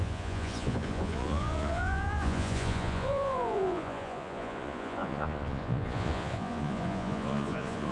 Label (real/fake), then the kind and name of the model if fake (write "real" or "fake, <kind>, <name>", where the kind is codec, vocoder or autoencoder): fake, vocoder, Vocos